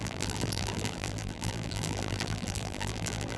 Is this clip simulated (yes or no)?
yes